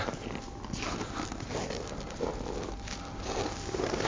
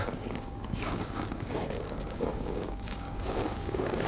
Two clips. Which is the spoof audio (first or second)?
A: second